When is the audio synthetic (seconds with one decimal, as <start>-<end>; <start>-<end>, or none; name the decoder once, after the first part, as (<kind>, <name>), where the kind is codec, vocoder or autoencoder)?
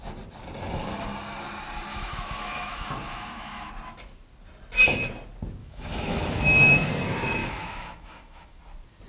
1.9-3.7 (autoencoder, DAC-VAE); 5.6-6.9; 7.4-8.6